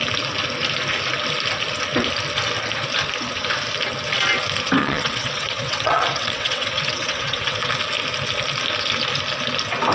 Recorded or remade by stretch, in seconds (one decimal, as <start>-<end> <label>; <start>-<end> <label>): 0.0-4.8 recorded; 4.8-7.7 remade; 7.7-9.9 recorded